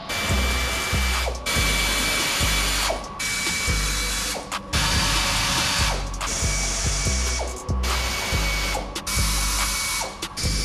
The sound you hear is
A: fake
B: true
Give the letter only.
B